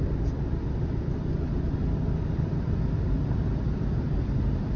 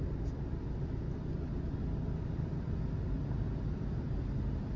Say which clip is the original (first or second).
second